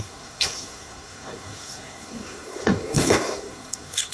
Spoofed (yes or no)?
yes